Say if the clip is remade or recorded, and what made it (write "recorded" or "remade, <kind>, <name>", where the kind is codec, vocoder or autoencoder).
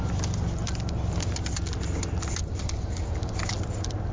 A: recorded